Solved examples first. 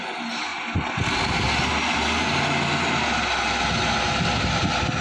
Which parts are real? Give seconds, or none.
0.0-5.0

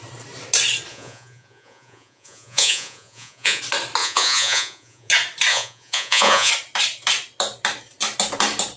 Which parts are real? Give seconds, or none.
0.0-0.9; 3.6-4.0; 5.1-5.5; 6.5-8.8

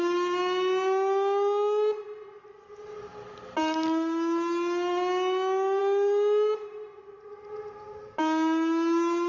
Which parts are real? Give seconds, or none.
0.0-9.3

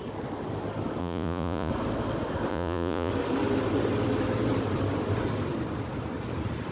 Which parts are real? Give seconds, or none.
0.0-1.0; 1.7-2.5; 3.1-6.7

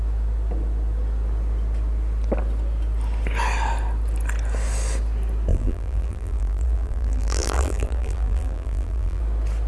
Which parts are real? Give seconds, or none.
0.0-5.5; 9.2-9.7

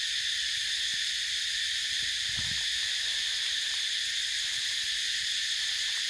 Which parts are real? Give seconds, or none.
0.0-6.1

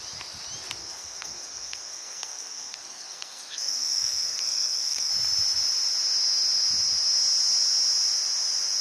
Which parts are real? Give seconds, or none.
0.0-0.8; 5.1-8.8